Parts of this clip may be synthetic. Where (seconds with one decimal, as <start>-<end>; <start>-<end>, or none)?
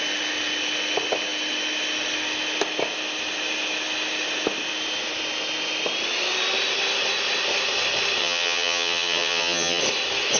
8.2-9.8